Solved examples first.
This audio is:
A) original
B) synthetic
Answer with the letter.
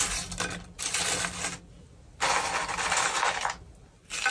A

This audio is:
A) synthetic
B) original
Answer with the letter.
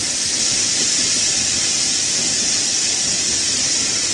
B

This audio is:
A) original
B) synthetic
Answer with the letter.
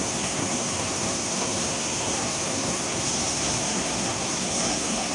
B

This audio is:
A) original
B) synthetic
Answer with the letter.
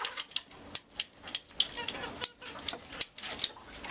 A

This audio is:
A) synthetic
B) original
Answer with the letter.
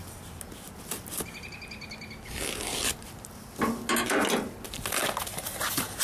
B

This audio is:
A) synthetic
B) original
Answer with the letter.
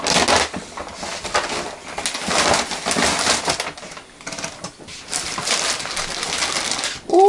B